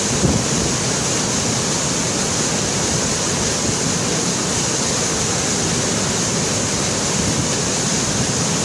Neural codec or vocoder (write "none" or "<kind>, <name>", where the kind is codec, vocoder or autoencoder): none